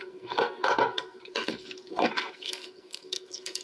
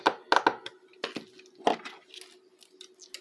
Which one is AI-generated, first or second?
first